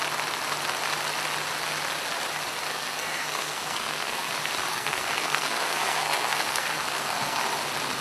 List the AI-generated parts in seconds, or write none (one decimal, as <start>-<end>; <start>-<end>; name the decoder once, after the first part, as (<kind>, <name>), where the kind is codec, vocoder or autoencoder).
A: 2.7-4.3 (codec, SNAC); 4.7-7.4